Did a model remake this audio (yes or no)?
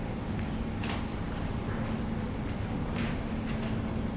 no